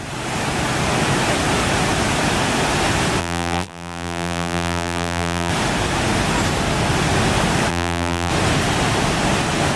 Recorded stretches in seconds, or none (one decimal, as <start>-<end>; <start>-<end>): 0.0-3.2; 5.5-7.7; 8.3-9.8